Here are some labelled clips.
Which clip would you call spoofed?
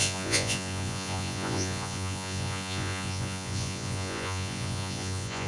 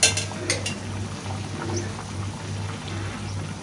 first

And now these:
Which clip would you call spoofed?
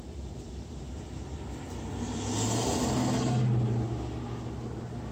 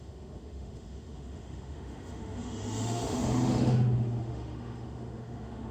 second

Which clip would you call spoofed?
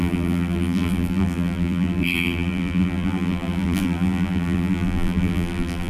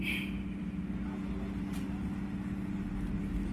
first